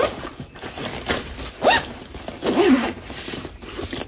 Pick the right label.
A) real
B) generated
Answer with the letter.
A